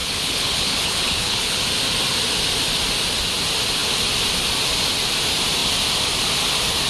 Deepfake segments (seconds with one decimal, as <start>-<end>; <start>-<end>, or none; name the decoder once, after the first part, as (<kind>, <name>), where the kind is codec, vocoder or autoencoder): 0.0-1.6 (codec, HILCodec)